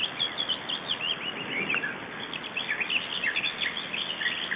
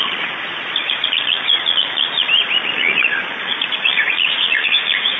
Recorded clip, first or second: first